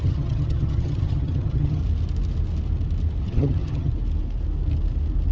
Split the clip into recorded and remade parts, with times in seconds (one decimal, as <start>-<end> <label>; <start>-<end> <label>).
0.0-1.8 remade; 1.8-3.2 recorded; 3.2-3.9 remade; 3.9-5.3 recorded